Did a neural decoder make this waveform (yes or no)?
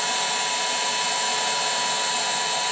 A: no